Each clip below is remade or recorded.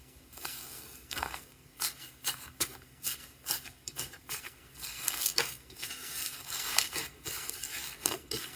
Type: remade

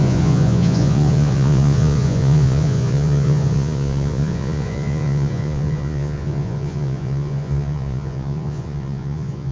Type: remade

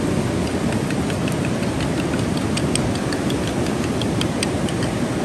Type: recorded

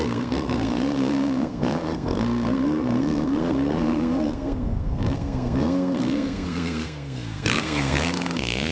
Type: remade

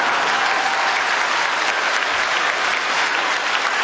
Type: recorded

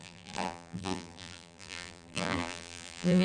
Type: remade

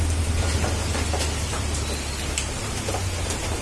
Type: recorded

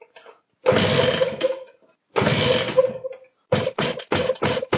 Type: recorded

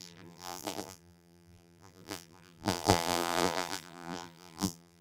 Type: remade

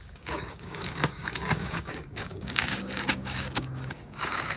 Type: remade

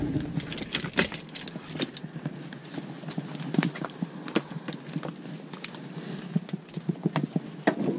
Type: recorded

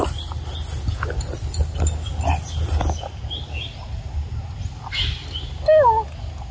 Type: recorded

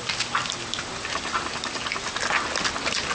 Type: recorded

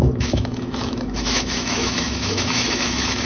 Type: remade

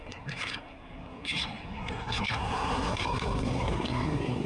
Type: remade